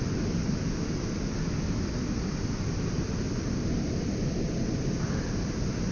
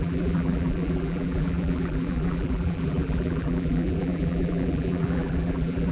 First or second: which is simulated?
second